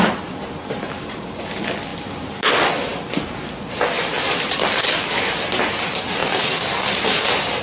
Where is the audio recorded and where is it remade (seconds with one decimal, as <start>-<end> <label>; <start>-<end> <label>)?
0.0-6.2 recorded; 6.2-7.0 remade; 7.0-7.6 recorded